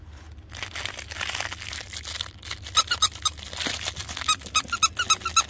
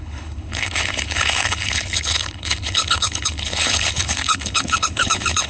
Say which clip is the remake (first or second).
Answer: second